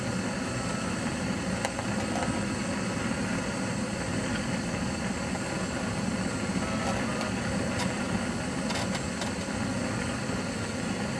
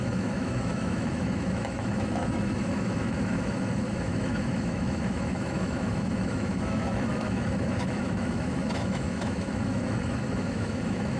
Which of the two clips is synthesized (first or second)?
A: second